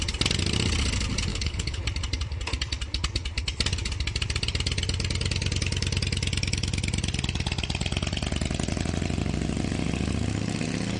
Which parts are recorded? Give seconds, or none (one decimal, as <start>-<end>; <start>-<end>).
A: 0.0-1.3; 1.8-11.0